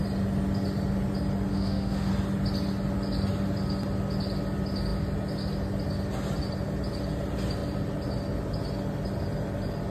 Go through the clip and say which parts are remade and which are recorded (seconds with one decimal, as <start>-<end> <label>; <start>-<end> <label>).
0.0-1.5 recorded; 1.5-2.1 remade; 2.1-9.9 recorded